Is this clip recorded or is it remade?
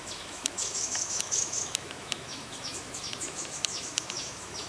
remade